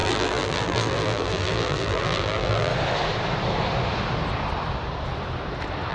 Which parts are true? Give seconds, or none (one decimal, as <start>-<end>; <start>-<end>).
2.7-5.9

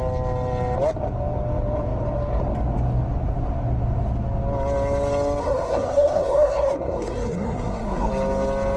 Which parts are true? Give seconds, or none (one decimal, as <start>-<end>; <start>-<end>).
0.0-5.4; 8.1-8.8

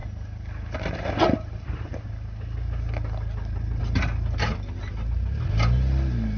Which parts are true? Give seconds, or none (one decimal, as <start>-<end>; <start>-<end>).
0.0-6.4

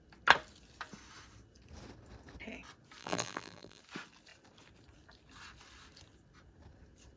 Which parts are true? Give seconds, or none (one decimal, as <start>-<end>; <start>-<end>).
0.0-3.0; 3.8-7.2

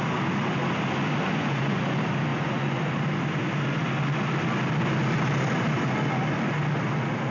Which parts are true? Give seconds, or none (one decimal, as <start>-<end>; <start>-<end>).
0.0-1.2; 1.8-2.3; 2.8-7.3

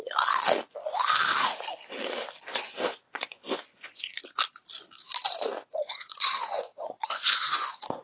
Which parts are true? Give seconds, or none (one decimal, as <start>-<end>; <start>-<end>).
0.0-2.5; 4.2-5.7

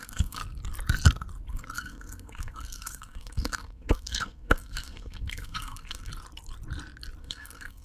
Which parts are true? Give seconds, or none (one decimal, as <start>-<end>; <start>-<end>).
0.4-1.5; 6.1-7.2

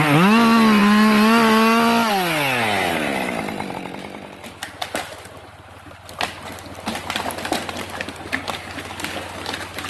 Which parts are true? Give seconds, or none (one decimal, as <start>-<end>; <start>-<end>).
0.0-9.9